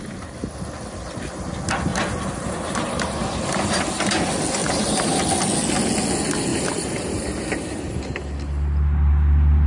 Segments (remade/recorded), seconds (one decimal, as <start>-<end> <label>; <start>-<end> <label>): 0.0-1.9 recorded; 1.9-4.0 remade; 4.0-4.6 recorded; 4.6-5.2 remade; 5.2-6.5 recorded; 6.5-8.0 remade; 8.0-9.7 recorded